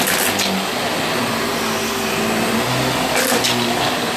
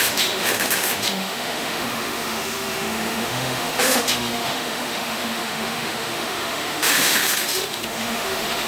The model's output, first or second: second